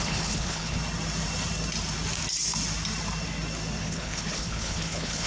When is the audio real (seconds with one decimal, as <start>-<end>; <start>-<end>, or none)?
0.8-3.8